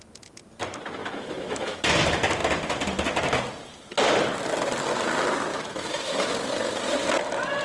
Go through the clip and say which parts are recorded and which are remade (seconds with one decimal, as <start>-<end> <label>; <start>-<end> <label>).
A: 0.0-1.0 recorded; 1.0-1.8 remade; 1.8-5.5 recorded; 5.5-6.3 remade; 6.3-7.6 recorded